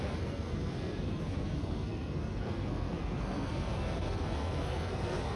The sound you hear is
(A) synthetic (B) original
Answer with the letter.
A